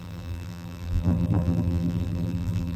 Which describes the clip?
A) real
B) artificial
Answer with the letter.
B